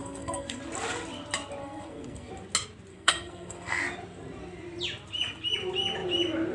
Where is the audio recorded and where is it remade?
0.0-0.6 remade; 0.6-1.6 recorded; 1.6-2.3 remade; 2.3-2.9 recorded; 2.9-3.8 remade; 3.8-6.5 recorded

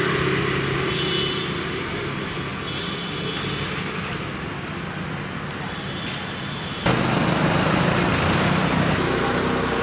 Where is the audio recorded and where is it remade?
0.0-9.8 recorded

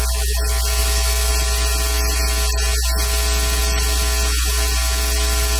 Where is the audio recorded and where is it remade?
0.0-0.8 recorded; 0.8-1.3 remade; 1.3-5.6 recorded

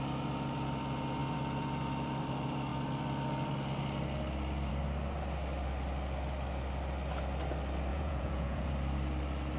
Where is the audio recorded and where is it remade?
0.0-7.9 recorded; 7.9-8.7 remade; 8.7-9.6 recorded

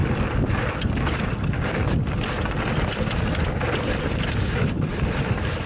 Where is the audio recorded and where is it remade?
0.0-5.7 recorded